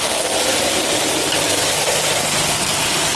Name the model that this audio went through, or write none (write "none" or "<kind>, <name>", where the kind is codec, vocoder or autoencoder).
none